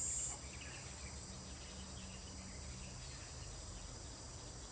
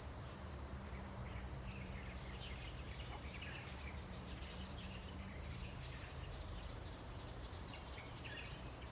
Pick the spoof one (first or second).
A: second